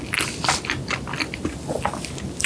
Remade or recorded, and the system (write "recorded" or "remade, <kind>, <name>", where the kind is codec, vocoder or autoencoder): recorded